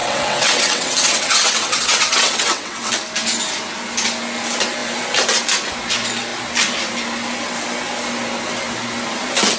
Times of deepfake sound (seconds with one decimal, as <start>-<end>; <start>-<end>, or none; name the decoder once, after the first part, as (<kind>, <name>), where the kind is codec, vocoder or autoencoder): 0.0-2.9 (vocoder, WaveNeXt)